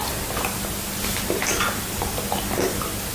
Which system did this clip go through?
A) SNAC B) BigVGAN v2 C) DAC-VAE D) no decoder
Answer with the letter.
D